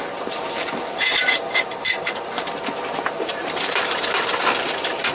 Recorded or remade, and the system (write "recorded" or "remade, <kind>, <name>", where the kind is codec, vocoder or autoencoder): remade, vocoder, BigVGAN v2